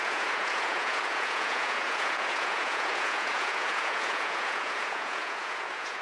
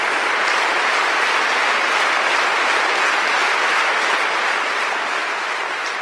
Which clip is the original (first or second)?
second